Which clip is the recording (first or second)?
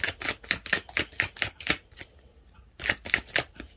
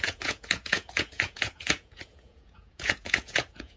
first